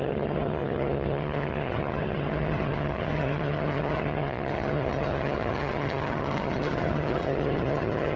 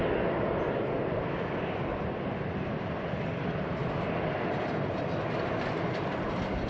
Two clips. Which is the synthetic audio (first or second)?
first